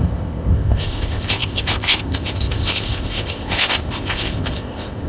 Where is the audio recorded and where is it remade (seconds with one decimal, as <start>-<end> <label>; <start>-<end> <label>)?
0.0-5.1 remade